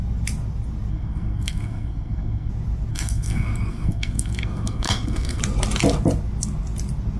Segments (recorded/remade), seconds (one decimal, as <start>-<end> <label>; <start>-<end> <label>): 0.0-0.9 recorded; 0.9-2.5 remade; 2.5-2.9 recorded; 2.9-5.4 remade; 5.4-7.2 recorded